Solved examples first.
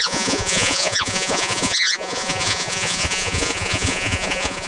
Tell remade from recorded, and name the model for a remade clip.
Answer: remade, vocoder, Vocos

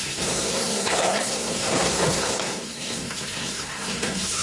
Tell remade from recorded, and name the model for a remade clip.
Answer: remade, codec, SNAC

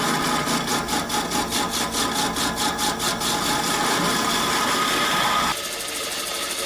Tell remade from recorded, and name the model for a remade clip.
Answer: recorded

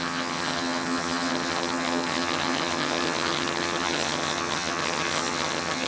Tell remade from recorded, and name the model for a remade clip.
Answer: remade, vocoder, HiFi-GAN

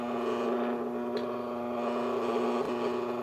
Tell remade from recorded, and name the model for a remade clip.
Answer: recorded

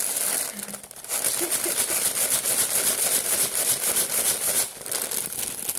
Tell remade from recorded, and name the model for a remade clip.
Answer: recorded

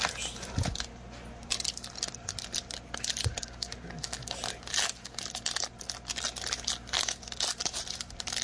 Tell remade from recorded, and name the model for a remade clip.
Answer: recorded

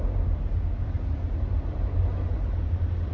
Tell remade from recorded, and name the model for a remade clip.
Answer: recorded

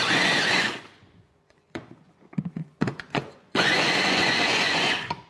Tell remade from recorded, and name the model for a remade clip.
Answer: remade, vocoder, Vocos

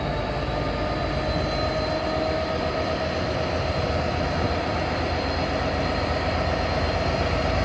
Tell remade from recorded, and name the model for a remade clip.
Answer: recorded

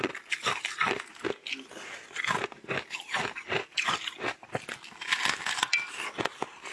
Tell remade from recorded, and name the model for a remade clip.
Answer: recorded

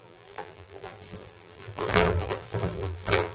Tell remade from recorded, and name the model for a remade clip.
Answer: remade, vocoder, BigVGAN v2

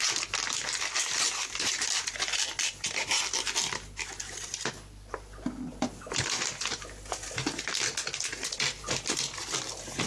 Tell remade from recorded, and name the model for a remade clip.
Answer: recorded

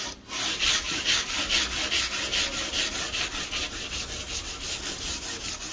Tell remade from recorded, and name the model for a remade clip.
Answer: recorded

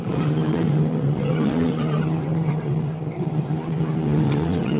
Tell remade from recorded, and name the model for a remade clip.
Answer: remade, vocoder, WaveNeXt